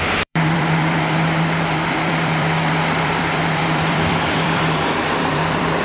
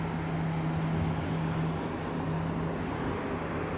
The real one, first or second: second